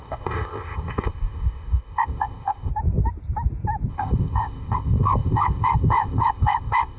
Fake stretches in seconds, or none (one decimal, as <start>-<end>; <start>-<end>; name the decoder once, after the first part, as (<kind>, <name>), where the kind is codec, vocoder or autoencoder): 0.0-2.7 (codec, ZipCodec); 3.9-7.0